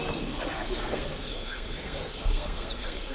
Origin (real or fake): fake